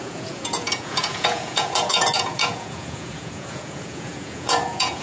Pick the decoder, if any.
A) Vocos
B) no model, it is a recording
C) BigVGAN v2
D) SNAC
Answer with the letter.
A